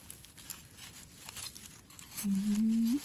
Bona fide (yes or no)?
yes